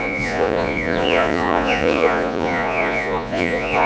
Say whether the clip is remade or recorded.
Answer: remade